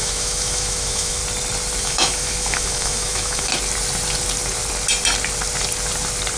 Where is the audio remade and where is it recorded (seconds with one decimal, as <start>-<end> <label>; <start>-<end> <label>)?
0.0-1.2 remade; 1.2-1.8 recorded; 1.8-3.5 remade; 3.5-6.4 recorded